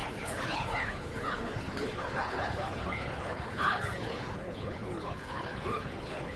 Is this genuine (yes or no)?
no